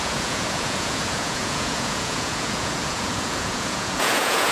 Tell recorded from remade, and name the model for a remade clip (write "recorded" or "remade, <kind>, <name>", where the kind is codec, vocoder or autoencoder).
remade, vocoder, Vocos